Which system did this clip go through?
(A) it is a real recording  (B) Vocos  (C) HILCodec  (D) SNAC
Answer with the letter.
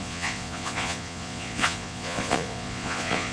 B